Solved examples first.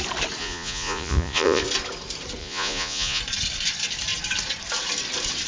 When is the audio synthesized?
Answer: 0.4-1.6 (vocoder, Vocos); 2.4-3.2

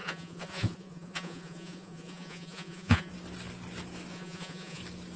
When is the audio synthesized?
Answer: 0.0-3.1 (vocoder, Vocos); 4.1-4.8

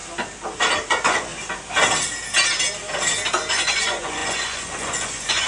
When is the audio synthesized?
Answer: 0.9-1.3 (vocoder, Vocos); 3.5-5.5

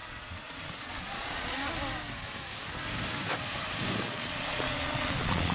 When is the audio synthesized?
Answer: 0.0-1.6 (vocoder, Vocos); 4.0-5.5

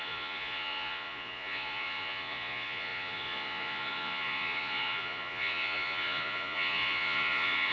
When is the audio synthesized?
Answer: 0.0-7.7 (vocoder, Vocos)

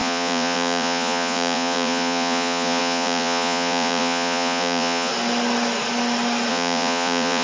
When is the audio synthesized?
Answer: 0.0-5.1 (vocoder, Vocos); 6.5-7.4

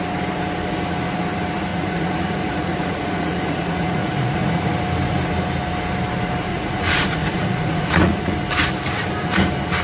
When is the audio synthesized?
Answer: 1.7-4.7 (vocoder, Vocos); 6.5-8.3